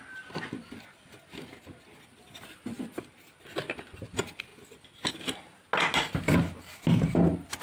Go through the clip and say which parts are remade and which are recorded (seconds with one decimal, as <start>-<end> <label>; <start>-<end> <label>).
0.0-7.6 recorded